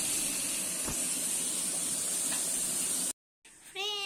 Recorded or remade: recorded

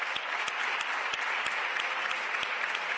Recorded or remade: recorded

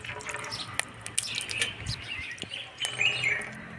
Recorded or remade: recorded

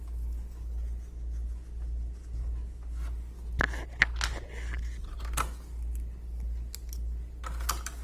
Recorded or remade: recorded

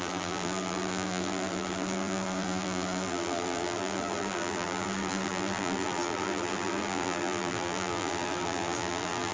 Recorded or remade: remade